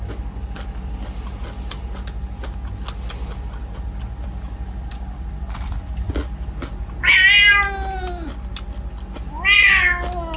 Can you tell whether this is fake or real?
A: real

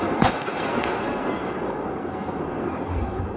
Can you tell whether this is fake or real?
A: fake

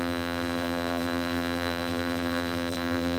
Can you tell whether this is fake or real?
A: fake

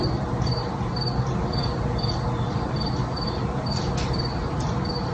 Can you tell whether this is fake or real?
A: real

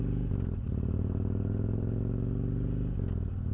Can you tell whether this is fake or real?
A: real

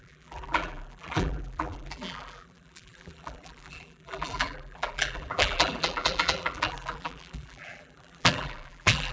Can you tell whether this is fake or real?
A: fake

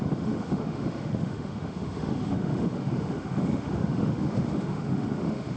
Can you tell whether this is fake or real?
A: fake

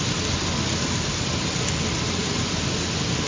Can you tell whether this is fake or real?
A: real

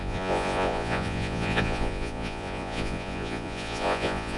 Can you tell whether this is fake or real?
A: fake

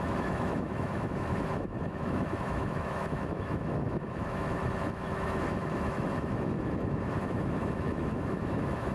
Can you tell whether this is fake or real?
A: fake